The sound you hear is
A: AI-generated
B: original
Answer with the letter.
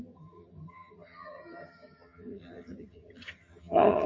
A